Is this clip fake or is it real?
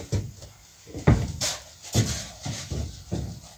real